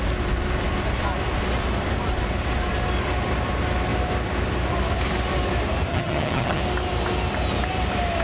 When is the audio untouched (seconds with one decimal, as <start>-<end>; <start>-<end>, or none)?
0.0-5.9; 6.6-8.2